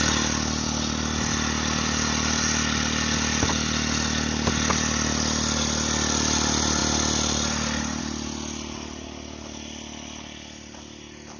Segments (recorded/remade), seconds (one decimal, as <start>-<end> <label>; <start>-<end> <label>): 0.0-11.4 recorded